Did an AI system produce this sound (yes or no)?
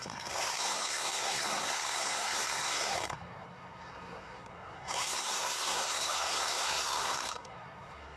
yes